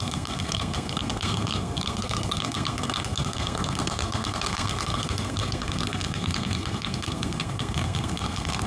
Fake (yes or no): yes